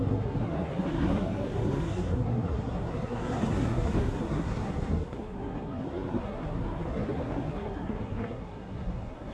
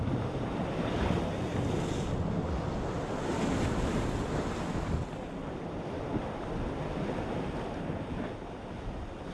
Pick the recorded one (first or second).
second